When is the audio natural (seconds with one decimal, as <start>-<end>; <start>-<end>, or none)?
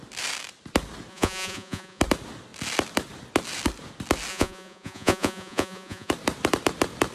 0.0-1.1; 2.0-4.3; 6.1-7.1